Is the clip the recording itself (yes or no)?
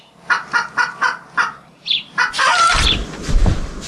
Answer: yes